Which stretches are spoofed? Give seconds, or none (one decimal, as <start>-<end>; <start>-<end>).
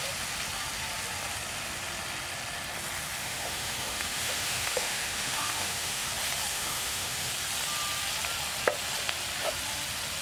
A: 3.2-6.1; 6.5-7.3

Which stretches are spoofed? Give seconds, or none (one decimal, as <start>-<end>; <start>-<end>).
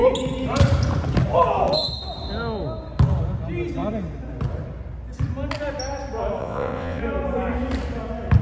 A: 6.4-7.0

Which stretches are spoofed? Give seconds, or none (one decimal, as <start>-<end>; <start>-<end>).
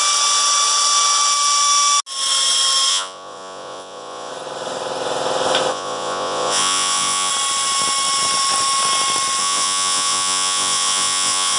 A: 2.9-4.3; 5.7-7.3; 9.4-11.6